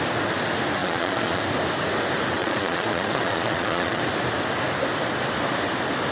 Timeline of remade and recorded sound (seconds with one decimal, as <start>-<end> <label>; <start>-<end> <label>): 0.0-0.8 recorded; 0.8-1.4 remade; 1.4-2.4 recorded; 2.4-4.0 remade; 4.0-6.1 recorded